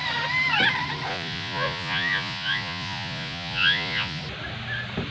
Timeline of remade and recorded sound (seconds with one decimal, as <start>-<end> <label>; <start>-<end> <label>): 0.0-1.1 recorded; 1.1-4.2 remade; 4.2-5.1 recorded